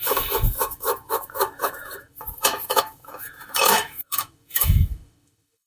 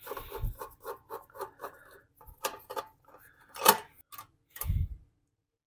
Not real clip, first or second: first